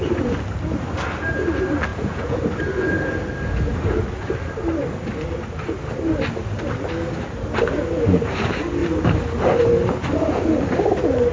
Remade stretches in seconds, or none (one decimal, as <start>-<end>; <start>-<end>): 1.9-2.4